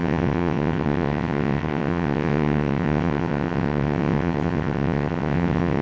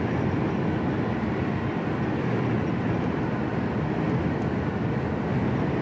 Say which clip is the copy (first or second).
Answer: first